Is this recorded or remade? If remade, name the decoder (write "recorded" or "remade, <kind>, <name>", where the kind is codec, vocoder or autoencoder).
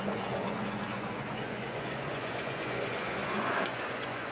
remade, vocoder, Vocos